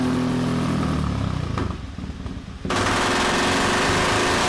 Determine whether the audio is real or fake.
real